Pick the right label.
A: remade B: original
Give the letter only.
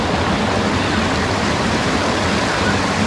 B